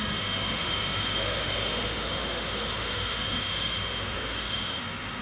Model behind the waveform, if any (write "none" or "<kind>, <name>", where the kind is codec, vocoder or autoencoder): autoencoder, DAC-VAE